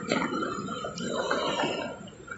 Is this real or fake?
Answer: real